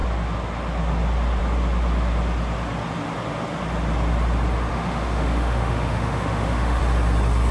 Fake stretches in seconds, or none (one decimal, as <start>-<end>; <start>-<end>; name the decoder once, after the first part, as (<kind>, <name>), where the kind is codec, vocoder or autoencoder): 4.7-6.8 (autoencoder, DAC-VAE)